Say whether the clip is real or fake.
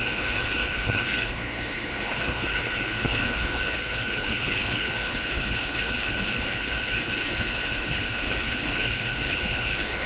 fake